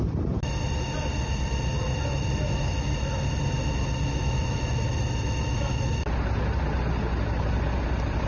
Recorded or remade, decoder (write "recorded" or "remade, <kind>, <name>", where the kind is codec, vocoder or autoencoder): recorded